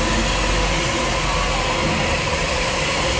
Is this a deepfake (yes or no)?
no